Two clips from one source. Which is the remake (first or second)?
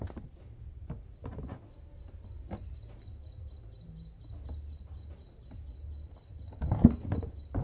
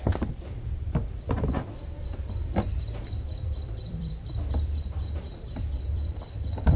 second